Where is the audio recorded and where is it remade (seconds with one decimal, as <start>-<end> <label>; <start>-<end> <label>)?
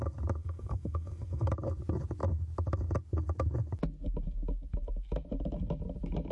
0.0-0.4 recorded; 0.4-1.5 remade; 1.5-6.3 recorded